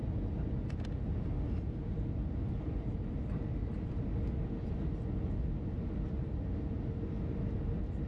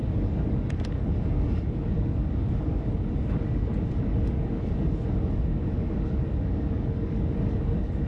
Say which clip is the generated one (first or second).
second